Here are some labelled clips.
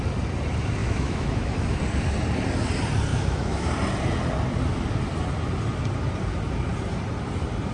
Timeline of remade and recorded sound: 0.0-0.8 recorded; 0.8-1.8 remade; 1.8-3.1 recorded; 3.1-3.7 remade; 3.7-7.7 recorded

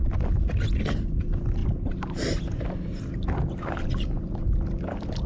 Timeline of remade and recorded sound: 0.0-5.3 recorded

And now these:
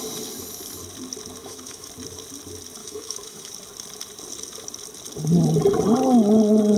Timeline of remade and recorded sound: 0.0-1.4 recorded; 1.4-1.9 remade; 1.9-2.8 recorded; 2.8-3.5 remade; 3.5-6.8 recorded

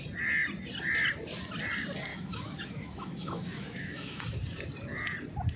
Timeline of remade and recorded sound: 0.0-2.1 recorded; 2.1-4.2 remade; 4.2-5.6 recorded